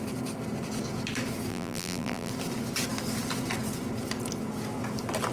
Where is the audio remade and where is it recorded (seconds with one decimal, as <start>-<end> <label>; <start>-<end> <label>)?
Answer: 0.0-1.5 recorded; 1.5-2.3 remade; 2.3-5.3 recorded